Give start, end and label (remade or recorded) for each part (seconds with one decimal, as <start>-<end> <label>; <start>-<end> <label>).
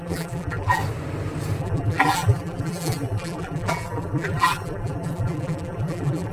0.0-0.8 remade; 0.8-1.6 recorded; 1.6-6.3 remade